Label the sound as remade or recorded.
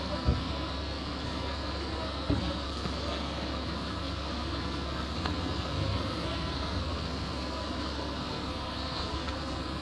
remade